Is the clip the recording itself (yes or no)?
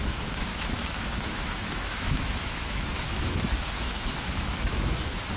no